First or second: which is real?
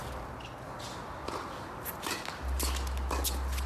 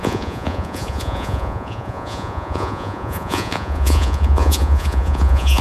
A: first